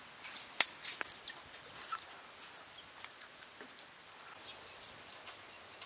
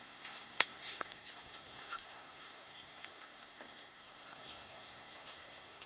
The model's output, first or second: second